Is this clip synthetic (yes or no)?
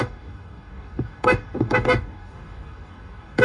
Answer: yes